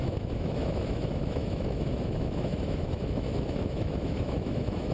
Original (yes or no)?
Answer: no